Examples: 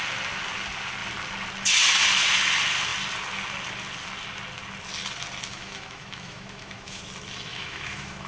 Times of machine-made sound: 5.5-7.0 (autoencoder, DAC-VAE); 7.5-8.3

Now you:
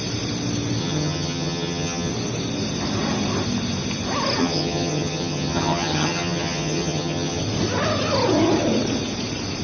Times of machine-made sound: 0.8-2.1 (vocoder, HiFi-GAN); 4.4-7.4